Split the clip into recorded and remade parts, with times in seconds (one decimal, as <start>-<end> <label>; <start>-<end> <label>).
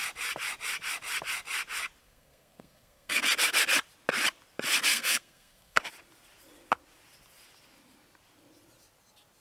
0.0-2.0 recorded; 2.0-3.2 remade; 3.2-4.9 recorded; 4.9-5.8 remade; 5.8-9.4 recorded